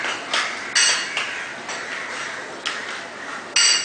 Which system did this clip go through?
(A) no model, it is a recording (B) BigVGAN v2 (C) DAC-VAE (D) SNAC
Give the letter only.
A